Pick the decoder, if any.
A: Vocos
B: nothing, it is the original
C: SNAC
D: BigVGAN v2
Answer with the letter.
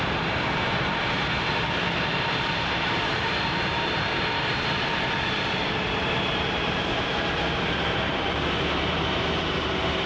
D